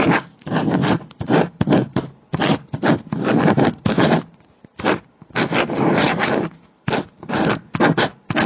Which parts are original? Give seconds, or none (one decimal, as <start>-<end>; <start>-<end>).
0.0-0.8; 1.9-8.5